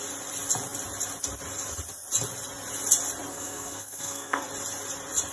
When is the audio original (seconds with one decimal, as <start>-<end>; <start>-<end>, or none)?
0.0-3.3; 4.4-5.3